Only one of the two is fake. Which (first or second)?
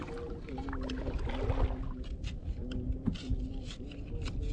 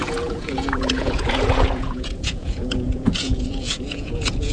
second